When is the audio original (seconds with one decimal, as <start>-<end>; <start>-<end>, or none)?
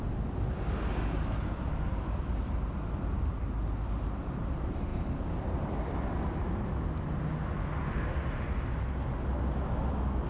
0.0-10.3